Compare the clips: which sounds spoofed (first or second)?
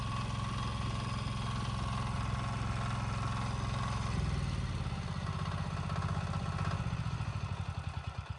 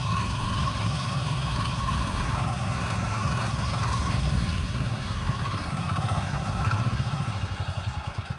second